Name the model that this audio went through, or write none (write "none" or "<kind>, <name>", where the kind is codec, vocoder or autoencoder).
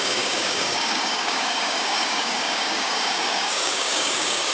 codec, DAC